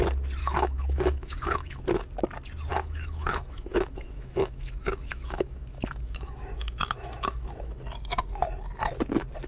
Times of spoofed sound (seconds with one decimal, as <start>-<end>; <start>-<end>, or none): 0.4-1.8; 2.7-7.8